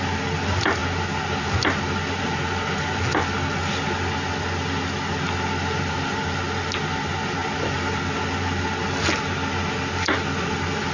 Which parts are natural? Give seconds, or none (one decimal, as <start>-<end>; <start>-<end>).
0.0-10.9